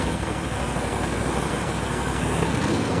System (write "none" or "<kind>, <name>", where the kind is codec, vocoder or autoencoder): codec, SNAC